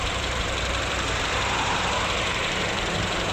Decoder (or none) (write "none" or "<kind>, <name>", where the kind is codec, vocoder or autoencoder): vocoder, BigVGAN v2